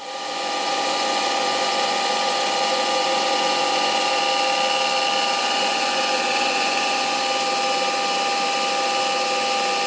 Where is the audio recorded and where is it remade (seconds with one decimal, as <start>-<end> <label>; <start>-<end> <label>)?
0.0-4.2 remade; 4.2-5.4 recorded; 5.4-7.2 remade; 7.2-9.9 recorded